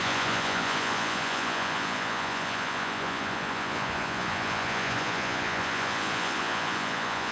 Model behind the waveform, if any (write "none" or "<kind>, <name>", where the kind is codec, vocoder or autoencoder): vocoder, Vocos